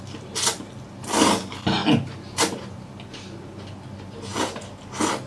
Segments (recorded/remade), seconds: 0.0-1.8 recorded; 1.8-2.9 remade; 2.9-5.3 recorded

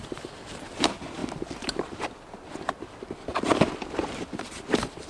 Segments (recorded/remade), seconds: 0.0-5.1 remade